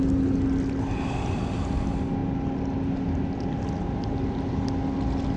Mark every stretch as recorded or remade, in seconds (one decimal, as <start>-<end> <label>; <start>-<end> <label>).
0.0-5.4 recorded